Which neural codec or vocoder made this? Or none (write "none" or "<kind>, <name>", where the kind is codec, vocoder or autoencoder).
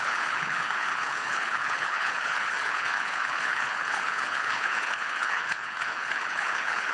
codec, HILCodec